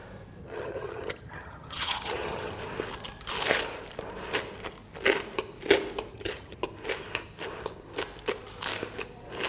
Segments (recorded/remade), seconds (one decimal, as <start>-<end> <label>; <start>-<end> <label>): 0.0-0.4 recorded; 0.4-2.5 remade; 2.5-6.1 recorded; 6.1-6.6 remade; 6.6-9.5 recorded